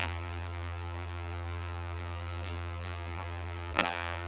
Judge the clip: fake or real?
fake